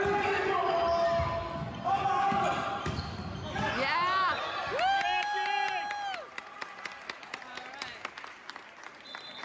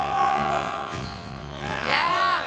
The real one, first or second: first